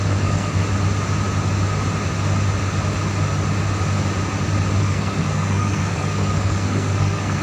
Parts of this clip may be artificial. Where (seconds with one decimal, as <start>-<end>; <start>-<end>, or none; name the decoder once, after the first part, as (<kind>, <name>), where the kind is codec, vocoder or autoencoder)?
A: 0.0-0.6 (codec, SNAC); 4.8-7.4